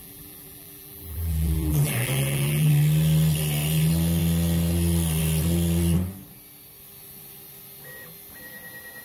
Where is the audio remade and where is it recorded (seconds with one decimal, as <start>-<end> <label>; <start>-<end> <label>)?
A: 0.0-2.7 remade; 2.7-9.0 recorded